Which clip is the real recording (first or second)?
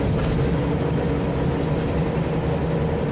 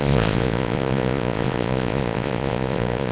first